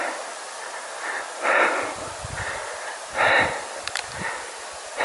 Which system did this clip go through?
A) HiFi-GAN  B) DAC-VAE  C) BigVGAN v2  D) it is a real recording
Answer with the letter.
C